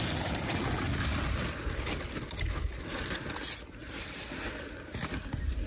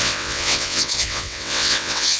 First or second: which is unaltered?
first